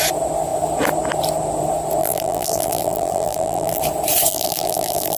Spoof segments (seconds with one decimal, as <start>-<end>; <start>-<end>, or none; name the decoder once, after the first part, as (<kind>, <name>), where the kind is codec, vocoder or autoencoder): 2.0-3.8 (vocoder, BigVGAN v2); 4.3-5.2